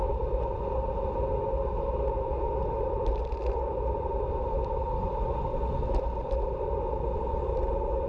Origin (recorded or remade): recorded